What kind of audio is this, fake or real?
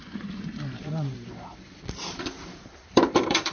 fake